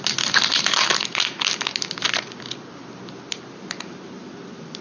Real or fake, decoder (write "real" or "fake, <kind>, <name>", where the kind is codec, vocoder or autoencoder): real